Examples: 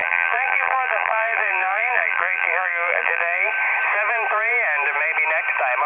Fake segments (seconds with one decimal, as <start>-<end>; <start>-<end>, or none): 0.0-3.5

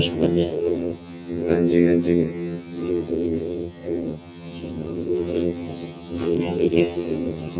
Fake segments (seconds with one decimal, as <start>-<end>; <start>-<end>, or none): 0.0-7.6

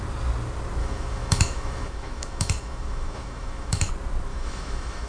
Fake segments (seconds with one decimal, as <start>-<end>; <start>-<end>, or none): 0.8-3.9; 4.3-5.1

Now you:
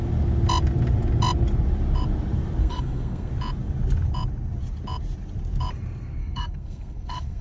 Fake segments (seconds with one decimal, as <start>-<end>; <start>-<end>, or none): 2.6-3.3; 6.2-7.4